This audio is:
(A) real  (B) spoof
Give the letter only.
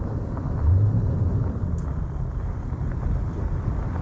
A